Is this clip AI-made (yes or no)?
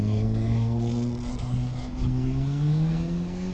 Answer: yes